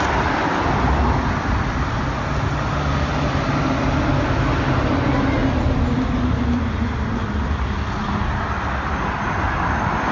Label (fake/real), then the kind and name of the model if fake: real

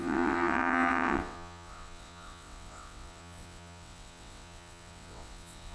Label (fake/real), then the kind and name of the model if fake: fake, vocoder, WaveNeXt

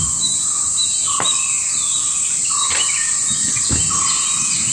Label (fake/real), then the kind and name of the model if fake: real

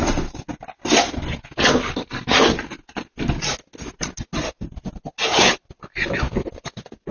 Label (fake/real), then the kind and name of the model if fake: real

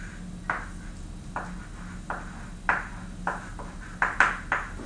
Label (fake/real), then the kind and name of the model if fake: real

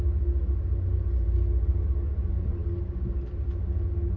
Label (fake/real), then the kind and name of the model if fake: real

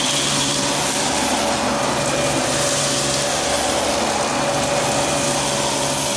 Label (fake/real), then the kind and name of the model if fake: real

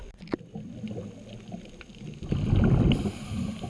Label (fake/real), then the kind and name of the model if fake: real